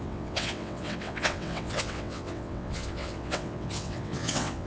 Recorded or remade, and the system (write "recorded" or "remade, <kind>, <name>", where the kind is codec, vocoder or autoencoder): remade, vocoder, WaveNeXt